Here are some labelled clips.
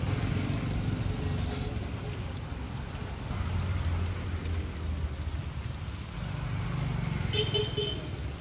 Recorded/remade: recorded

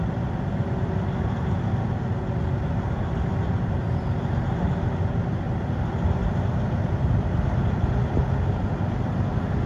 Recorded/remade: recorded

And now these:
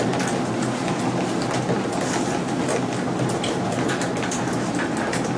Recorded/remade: recorded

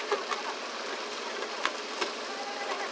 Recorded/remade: recorded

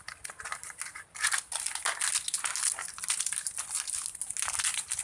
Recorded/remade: recorded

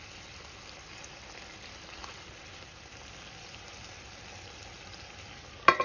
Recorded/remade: recorded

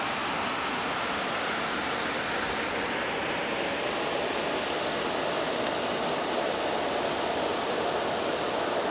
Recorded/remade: recorded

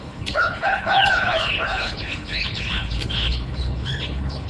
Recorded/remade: remade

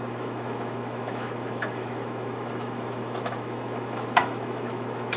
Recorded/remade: remade